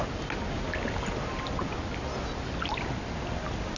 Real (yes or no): yes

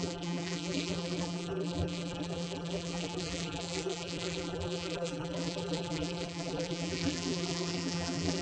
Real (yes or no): no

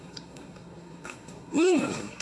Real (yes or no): no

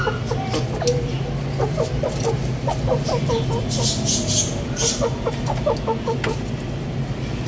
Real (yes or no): yes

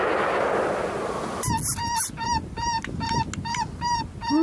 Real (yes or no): yes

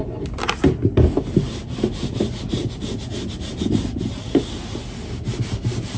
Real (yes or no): yes